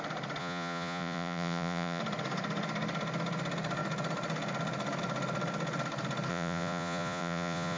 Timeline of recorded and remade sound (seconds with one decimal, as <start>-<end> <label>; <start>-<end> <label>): 0.0-0.4 recorded; 0.4-2.0 remade; 2.0-6.3 recorded; 6.3-7.8 remade